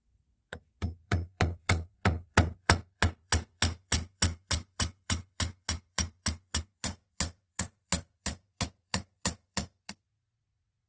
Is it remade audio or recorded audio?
remade